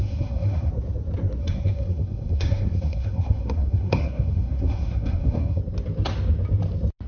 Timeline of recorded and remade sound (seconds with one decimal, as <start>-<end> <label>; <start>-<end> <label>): 0.0-0.7 remade; 0.7-1.4 recorded; 1.4-5.6 remade; 5.6-7.1 recorded